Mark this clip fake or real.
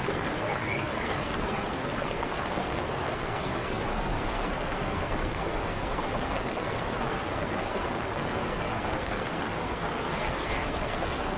fake